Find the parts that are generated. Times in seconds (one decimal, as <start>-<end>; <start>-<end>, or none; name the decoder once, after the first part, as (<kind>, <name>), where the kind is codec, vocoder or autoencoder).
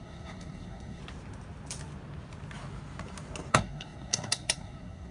0.0-1.0 (codec, SNAC); 3.5-5.1